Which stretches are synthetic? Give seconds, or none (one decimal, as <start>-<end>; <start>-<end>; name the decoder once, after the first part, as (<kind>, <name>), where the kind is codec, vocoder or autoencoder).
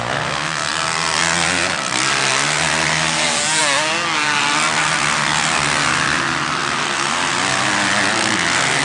none